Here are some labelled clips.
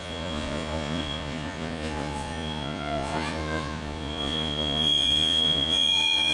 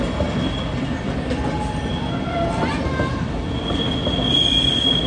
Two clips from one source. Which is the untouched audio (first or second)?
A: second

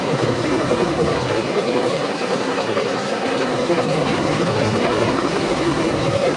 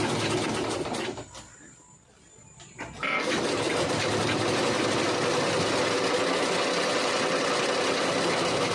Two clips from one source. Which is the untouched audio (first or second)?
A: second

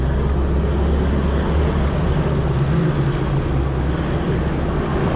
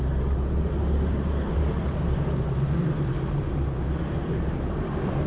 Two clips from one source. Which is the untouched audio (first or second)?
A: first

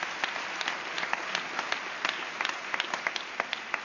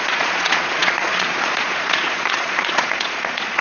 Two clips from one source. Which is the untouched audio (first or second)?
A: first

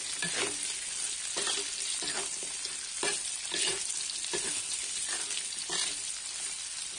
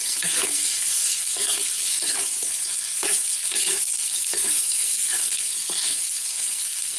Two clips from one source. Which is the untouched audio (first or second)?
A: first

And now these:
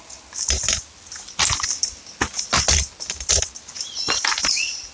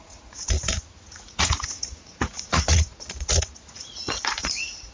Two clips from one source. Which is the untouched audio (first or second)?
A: first